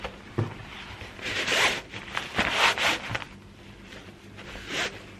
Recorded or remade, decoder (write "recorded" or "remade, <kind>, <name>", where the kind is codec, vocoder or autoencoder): recorded